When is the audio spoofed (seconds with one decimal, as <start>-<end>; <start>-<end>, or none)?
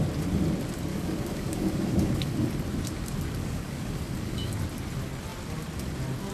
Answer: 0.9-2.5; 3.4-4.6